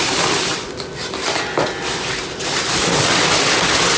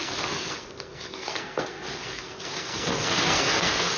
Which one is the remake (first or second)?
second